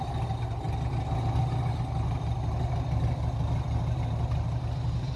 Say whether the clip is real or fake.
real